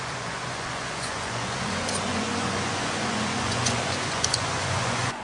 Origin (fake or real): fake